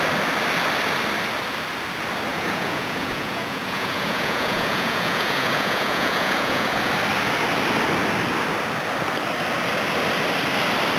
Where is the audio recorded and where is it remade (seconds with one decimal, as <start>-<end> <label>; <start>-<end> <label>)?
0.0-2.3 recorded; 2.3-6.9 remade; 6.9-11.0 recorded